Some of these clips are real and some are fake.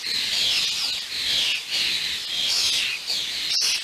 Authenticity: real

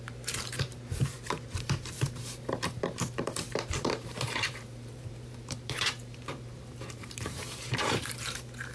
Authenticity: fake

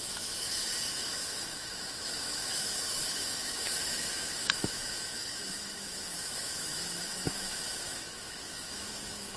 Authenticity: fake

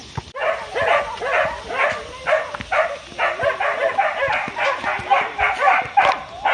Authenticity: real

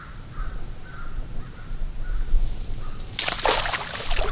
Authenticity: real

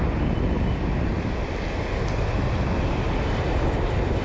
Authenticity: real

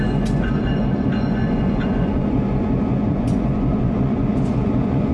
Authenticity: fake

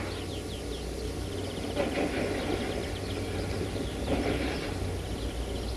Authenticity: real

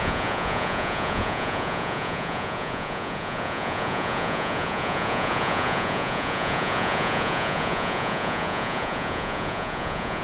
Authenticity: fake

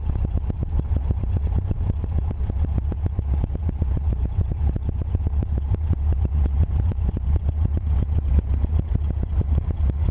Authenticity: fake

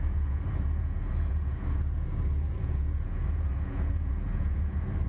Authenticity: fake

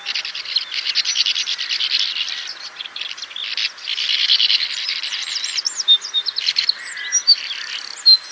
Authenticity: real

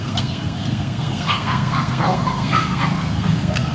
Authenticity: fake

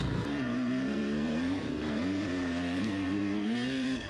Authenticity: fake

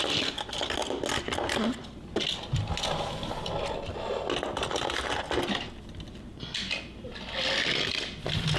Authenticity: real